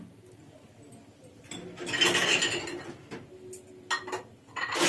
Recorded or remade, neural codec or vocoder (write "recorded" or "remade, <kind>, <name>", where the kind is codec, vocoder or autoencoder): recorded